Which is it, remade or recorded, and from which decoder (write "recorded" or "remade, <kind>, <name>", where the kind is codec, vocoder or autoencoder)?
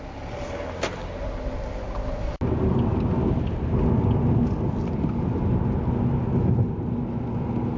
recorded